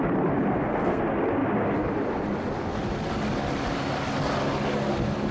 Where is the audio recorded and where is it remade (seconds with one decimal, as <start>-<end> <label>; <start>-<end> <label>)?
0.0-0.5 recorded; 0.5-1.0 remade; 1.0-5.3 recorded